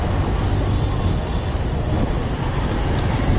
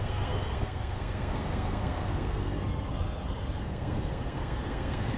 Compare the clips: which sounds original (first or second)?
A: first